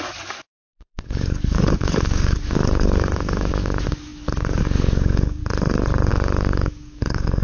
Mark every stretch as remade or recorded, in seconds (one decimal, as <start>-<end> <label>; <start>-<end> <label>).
0.0-5.4 remade; 5.4-6.1 recorded; 6.1-7.4 remade